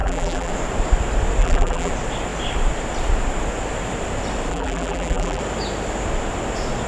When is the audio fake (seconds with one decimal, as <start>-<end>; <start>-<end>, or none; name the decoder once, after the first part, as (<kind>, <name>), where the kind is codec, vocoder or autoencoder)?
0.0-0.5 (vocoder, BigVGAN v2); 1.4-1.9; 4.5-5.4